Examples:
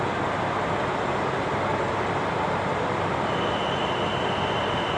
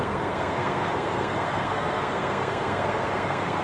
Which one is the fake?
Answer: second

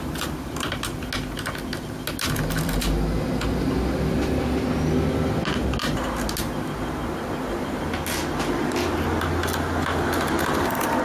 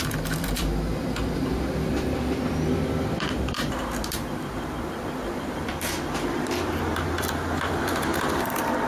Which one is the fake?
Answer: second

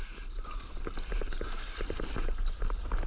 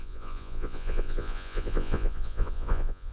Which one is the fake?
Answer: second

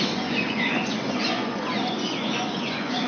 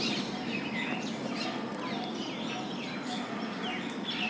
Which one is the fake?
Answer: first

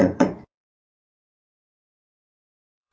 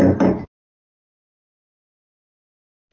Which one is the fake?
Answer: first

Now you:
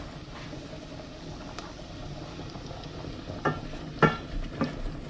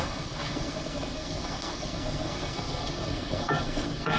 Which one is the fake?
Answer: second